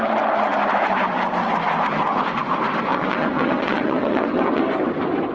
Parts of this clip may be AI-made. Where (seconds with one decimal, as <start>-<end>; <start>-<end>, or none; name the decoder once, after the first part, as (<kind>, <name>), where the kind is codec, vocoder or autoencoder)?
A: 2.9-4.6 (vocoder, WaveNeXt)